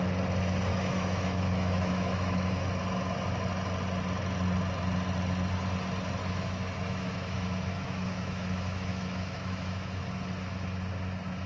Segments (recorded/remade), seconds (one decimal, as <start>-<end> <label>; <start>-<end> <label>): 0.0-0.7 recorded; 0.7-2.7 remade; 2.7-6.2 recorded; 6.2-10.0 remade; 10.0-11.5 recorded